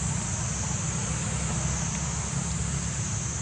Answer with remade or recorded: recorded